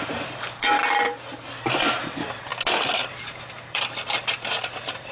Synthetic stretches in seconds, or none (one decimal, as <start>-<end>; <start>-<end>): 0.0-0.8; 1.6-2.5; 3.1-5.1